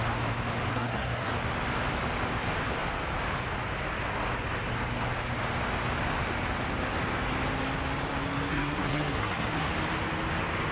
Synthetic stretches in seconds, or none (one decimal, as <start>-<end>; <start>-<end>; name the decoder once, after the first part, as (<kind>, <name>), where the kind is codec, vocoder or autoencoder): 0.7-1.3 (codec, SNAC); 8.5-9.7